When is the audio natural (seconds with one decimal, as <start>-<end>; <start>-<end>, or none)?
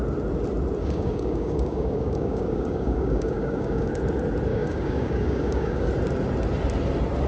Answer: 0.0-0.8; 3.9-4.5; 5.9-7.3